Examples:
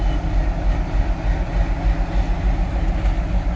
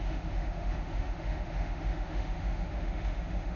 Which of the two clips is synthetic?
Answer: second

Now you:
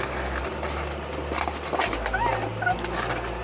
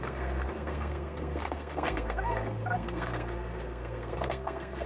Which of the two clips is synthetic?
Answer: second